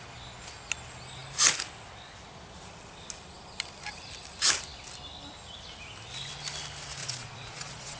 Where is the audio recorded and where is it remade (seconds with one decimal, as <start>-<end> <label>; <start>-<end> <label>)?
0.0-7.0 recorded; 7.0-8.0 remade